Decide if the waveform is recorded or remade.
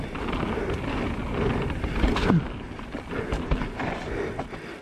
recorded